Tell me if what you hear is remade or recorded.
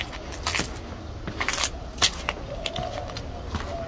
recorded